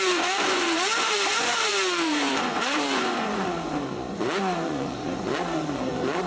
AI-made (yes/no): yes